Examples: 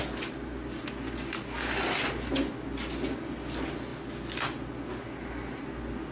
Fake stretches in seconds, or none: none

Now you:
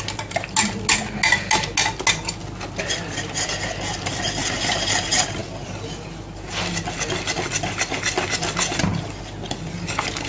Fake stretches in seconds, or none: 5.4-8.0 (vocoder, BigVGAN v2); 8.9-9.9

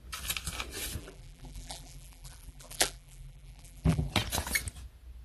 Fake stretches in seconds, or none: 1.0-4.1 (vocoder, BigVGAN v2)